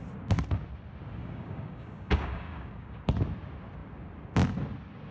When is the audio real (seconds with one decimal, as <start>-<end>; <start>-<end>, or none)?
0.0-1.2; 3.0-5.1